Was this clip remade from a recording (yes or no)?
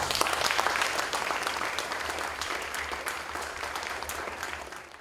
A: yes